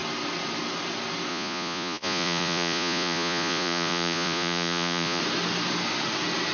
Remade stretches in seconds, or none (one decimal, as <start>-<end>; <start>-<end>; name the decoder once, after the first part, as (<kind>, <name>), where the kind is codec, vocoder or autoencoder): 1.3-5.2 (vocoder, Vocos)